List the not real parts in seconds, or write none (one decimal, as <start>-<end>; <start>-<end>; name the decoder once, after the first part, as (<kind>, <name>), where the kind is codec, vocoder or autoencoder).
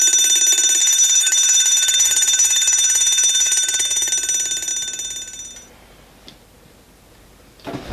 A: 0.8-4.1 (autoencoder, DAC-VAE)